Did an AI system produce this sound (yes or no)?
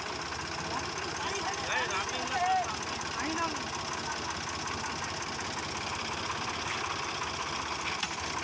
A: no